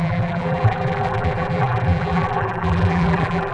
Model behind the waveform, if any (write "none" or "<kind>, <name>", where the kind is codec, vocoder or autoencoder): vocoder, BigVGAN v2